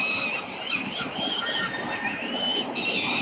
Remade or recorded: recorded